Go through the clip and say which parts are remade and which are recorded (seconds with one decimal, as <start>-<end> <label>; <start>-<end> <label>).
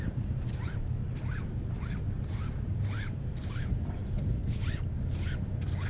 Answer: 0.0-1.0 remade; 1.0-2.3 recorded; 2.3-4.4 remade; 4.4-5.0 recorded; 5.0-5.9 remade